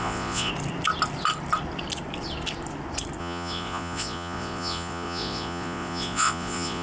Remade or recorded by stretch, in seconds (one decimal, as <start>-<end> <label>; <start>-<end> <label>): 0.0-0.5 remade; 0.5-3.2 recorded; 3.2-6.8 remade